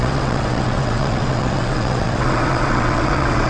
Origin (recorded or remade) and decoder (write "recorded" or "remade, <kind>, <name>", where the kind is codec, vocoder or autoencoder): remade, vocoder, WaveNeXt